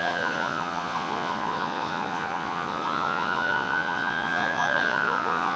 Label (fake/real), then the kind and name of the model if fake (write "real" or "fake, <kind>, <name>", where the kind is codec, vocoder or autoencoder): fake, vocoder, Vocos